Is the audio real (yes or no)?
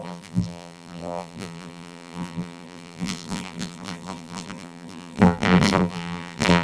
no